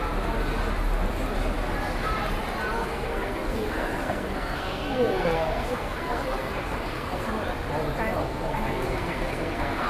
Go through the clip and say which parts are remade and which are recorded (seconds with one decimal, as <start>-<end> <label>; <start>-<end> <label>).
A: 0.0-2.8 recorded; 2.8-7.3 remade; 7.3-8.2 recorded; 8.2-9.9 remade